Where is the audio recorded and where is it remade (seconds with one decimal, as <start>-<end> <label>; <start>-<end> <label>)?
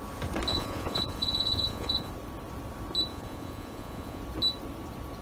0.0-0.5 recorded; 0.5-2.1 remade; 2.1-3.1 recorded; 3.1-4.2 remade; 4.2-5.2 recorded